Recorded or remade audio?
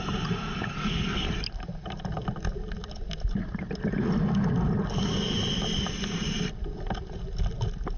recorded